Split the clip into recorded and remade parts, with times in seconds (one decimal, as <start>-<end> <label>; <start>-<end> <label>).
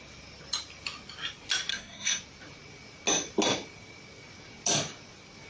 0.0-1.7 recorded; 1.7-2.2 remade; 2.2-5.5 recorded